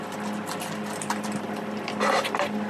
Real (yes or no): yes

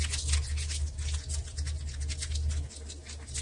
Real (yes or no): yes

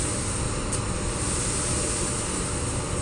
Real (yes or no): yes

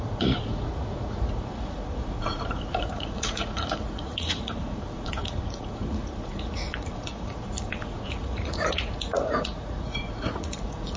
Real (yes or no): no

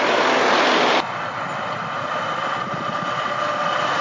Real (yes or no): yes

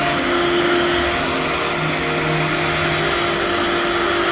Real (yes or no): yes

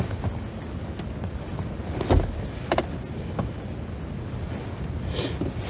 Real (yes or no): yes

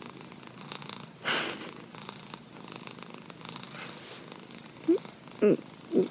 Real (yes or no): yes